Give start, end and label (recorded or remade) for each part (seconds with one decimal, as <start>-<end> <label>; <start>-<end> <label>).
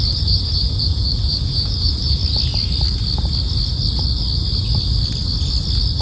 0.0-2.2 remade; 2.2-6.0 recorded